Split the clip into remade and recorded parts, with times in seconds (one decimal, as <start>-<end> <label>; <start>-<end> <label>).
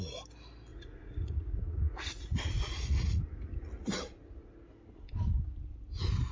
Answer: 0.0-0.7 recorded; 0.7-3.2 remade; 3.2-6.3 recorded